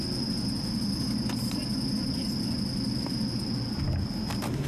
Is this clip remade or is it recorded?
recorded